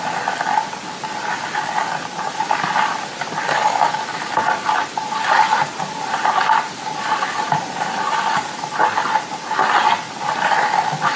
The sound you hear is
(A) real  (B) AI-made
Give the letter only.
A